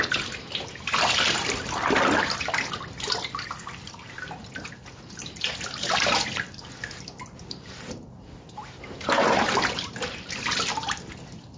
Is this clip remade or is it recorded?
recorded